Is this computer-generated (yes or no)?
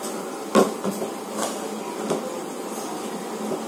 no